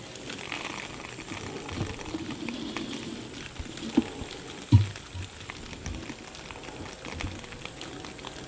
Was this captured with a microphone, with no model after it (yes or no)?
yes